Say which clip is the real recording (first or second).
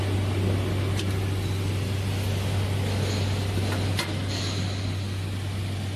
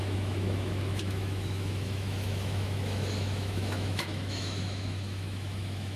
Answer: first